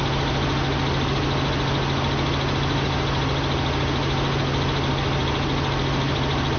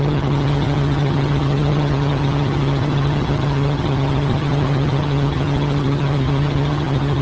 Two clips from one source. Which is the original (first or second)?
first